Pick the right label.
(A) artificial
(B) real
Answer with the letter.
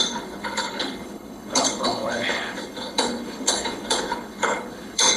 A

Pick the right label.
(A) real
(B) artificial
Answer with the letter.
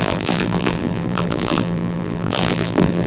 B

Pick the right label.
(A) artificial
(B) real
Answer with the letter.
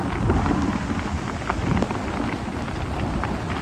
B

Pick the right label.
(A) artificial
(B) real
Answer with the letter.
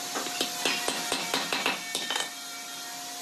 B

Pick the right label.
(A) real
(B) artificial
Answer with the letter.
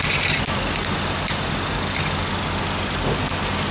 A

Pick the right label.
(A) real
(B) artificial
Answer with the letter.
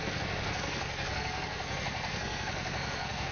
B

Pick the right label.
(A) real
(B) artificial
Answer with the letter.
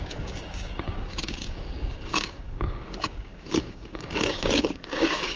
B